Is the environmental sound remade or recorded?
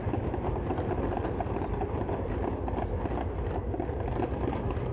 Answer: recorded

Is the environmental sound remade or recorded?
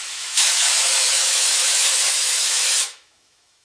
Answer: remade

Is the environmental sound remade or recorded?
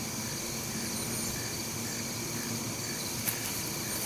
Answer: recorded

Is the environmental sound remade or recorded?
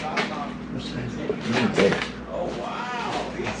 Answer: recorded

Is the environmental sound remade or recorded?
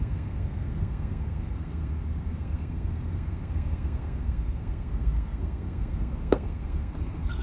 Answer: remade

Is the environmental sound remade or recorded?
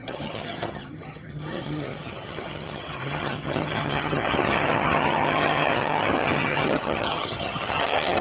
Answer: remade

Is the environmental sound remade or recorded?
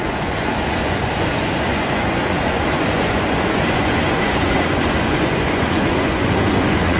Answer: remade